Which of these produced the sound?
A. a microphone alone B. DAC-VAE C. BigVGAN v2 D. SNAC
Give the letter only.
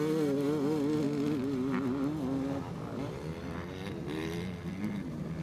A